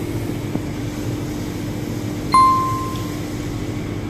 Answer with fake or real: real